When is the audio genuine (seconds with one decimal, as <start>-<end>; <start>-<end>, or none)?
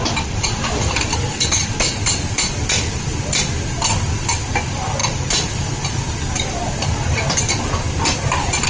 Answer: 0.0-8.7